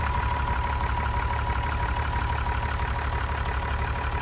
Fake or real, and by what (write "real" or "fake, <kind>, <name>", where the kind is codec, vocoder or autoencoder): real